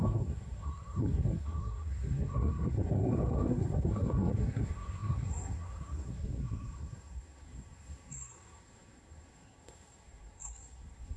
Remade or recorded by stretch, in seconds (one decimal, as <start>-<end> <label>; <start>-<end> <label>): 0.0-11.2 remade